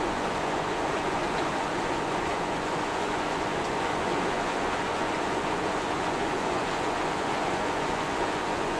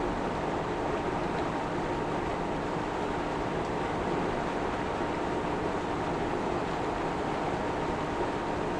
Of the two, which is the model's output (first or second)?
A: first